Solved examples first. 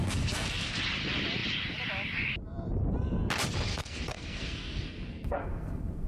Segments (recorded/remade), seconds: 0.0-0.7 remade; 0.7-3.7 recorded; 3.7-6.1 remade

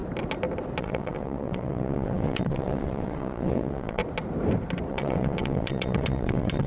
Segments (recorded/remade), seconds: 0.0-0.8 recorded; 0.8-4.0 remade; 4.0-4.9 recorded; 4.9-6.7 remade

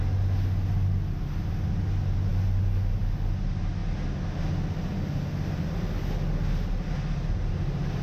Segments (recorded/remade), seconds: 0.0-8.0 recorded

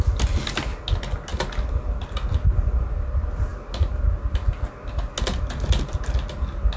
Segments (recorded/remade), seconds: 0.0-6.8 recorded

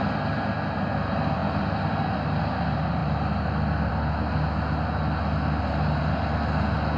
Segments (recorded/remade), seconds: 0.0-7.0 recorded

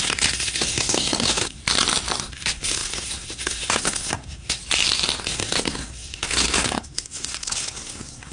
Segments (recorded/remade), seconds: 0.0-1.6 remade; 1.6-2.2 recorded; 2.2-4.6 remade; 4.6-5.2 recorded; 5.2-8.3 remade